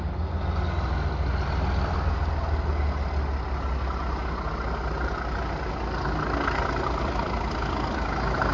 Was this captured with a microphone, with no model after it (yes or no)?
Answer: yes